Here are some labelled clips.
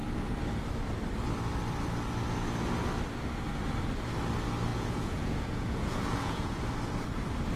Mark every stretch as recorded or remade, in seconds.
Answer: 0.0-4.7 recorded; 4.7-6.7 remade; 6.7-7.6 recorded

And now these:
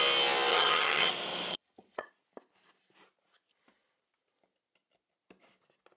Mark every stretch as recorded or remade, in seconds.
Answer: 0.0-0.5 recorded; 0.5-1.1 remade; 1.1-1.5 recorded; 1.5-2.1 remade; 2.1-6.0 recorded

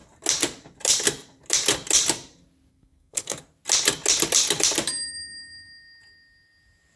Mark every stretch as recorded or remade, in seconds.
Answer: 0.0-2.7 recorded; 2.7-3.4 remade; 3.4-7.0 recorded

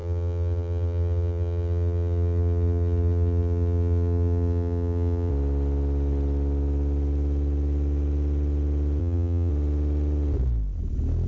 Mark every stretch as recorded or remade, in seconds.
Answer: 0.0-5.3 remade; 5.3-9.0 recorded; 9.0-9.5 remade; 9.5-11.3 recorded

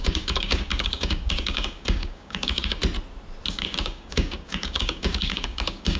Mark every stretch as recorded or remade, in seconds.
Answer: 0.0-2.8 remade; 2.8-3.5 recorded; 3.5-6.0 remade

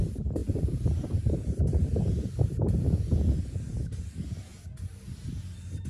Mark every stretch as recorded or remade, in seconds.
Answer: 0.0-0.4 recorded; 0.4-2.9 remade; 2.9-5.9 recorded